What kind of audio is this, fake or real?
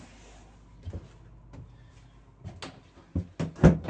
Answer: real